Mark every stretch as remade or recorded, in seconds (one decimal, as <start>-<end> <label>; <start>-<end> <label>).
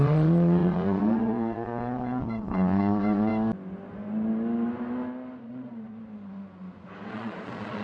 0.0-3.3 remade; 3.3-5.4 recorded; 5.4-5.9 remade; 5.9-7.1 recorded; 7.1-7.8 remade